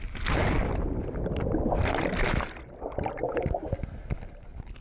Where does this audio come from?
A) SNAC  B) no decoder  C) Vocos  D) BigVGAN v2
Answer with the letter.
B